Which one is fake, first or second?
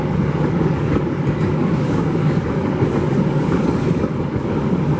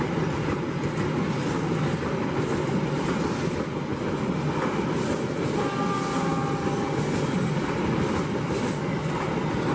first